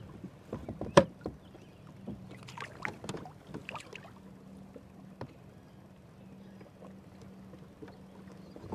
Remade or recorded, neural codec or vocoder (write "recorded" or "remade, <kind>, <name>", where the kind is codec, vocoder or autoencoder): recorded